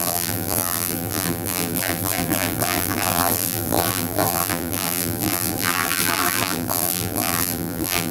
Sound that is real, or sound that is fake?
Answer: fake